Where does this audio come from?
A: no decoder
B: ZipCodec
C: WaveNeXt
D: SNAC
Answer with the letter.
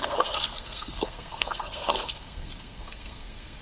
D